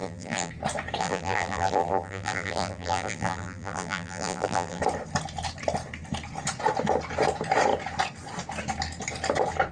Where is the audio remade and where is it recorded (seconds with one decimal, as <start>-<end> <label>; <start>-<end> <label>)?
0.0-0.5 remade; 0.5-1.0 recorded; 1.0-4.8 remade; 4.8-9.7 recorded